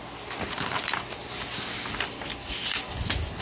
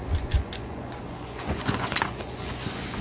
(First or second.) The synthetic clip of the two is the second